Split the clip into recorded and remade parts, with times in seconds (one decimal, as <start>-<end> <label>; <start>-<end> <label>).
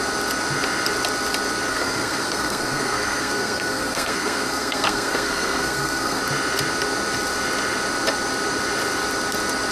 0.0-1.7 recorded; 1.7-6.2 remade; 6.2-9.7 recorded